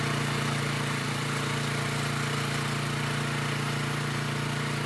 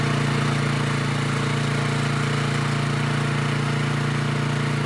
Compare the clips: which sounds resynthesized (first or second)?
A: first